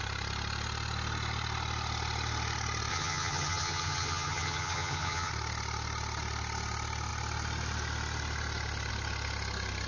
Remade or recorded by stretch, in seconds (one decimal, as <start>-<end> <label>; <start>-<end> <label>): 0.0-2.9 recorded; 2.9-5.3 remade; 5.3-9.9 recorded